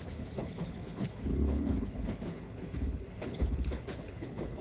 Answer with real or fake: fake